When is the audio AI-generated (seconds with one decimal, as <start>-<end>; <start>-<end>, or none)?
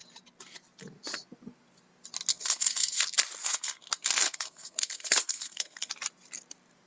2.3-3.0; 3.4-5.9